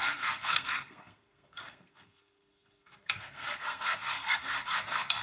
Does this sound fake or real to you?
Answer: fake